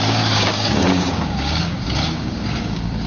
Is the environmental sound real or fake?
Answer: fake